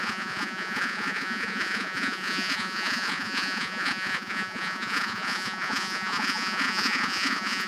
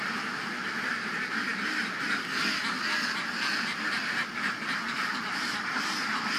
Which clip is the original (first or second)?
second